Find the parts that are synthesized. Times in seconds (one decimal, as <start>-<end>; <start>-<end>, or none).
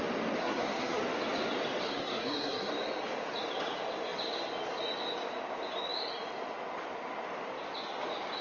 0.4-1.0; 1.8-2.7